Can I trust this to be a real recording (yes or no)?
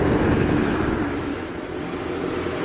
yes